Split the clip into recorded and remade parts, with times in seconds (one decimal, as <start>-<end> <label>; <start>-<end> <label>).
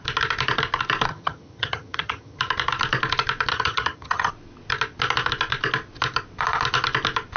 0.0-1.1 recorded; 1.1-2.4 remade; 2.4-3.5 recorded; 3.5-4.3 remade; 4.3-7.4 recorded